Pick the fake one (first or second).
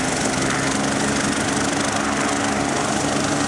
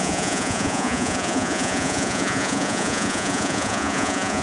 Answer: second